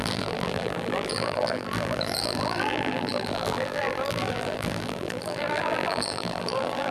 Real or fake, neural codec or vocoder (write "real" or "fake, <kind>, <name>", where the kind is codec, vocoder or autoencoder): fake, vocoder, BigVGAN v2